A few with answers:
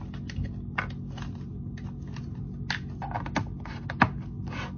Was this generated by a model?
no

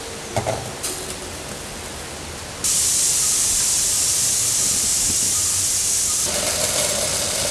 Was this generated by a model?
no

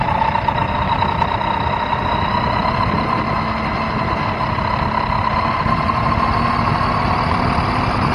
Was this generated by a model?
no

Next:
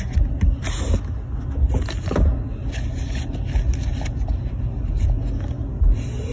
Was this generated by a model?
no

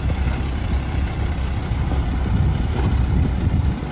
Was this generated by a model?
no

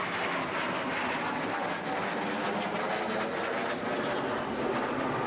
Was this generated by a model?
no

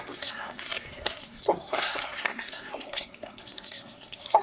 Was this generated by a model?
yes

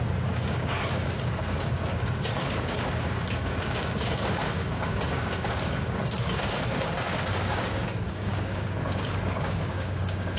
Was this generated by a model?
yes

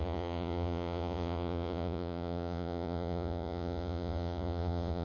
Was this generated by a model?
yes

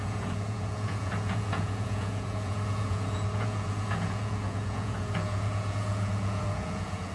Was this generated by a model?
yes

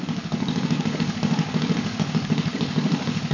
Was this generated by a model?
yes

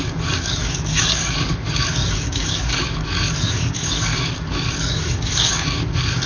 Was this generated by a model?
yes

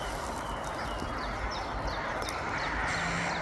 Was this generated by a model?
no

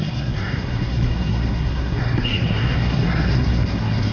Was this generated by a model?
yes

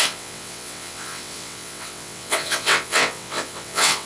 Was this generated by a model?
yes